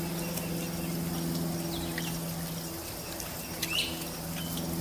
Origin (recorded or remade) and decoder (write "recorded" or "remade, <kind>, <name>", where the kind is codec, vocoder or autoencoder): recorded